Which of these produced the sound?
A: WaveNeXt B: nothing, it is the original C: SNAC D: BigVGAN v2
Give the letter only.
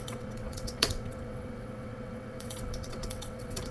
A